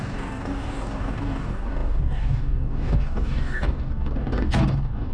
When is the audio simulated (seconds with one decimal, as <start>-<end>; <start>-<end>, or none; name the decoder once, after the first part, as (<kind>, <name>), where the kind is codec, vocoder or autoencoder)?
0.0-5.1 (codec, DAC)